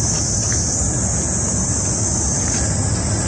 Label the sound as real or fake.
real